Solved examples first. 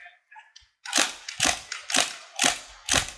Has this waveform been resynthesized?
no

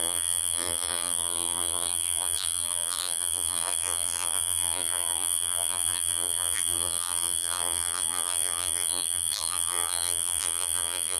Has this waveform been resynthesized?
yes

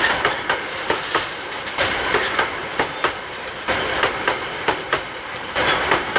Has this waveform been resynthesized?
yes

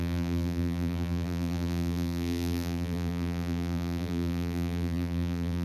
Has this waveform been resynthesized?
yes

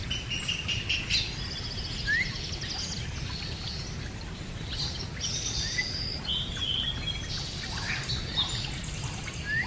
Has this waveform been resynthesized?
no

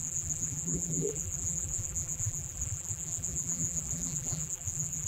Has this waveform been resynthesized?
yes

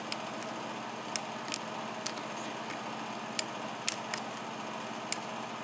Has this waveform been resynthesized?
no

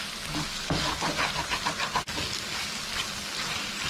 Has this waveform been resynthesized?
no